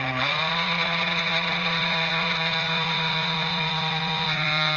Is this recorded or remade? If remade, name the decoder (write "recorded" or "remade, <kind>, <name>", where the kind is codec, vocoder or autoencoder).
remade, vocoder, Vocos